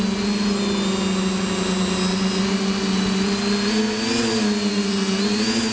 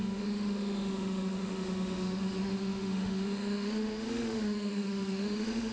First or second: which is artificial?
second